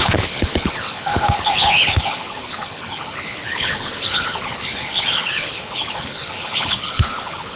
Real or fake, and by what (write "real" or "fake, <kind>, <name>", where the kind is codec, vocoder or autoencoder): fake, codec, HILCodec